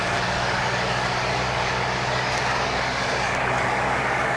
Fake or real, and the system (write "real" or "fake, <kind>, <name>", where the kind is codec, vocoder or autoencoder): fake, codec, DAC